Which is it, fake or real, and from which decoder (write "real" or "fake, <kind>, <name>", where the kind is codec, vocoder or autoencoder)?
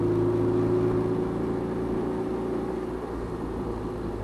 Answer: real